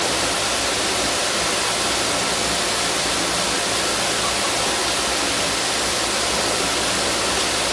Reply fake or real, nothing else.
real